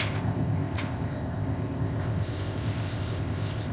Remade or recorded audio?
remade